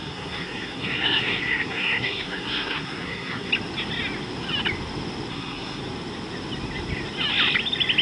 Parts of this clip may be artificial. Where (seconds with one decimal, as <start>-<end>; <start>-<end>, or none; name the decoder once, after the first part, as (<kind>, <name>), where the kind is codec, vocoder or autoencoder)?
0.0-3.5 (codec, SNAC); 5.3-5.8